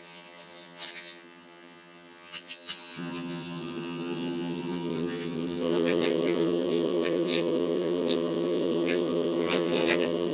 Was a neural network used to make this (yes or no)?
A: yes